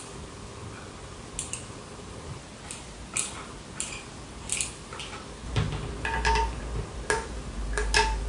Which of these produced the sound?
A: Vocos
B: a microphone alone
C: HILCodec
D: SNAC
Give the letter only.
B